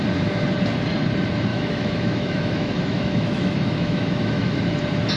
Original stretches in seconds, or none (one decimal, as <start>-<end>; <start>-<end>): 0.0-1.5; 4.6-5.2